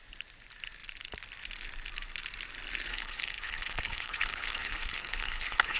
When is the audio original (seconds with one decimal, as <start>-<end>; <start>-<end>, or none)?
0.0-2.9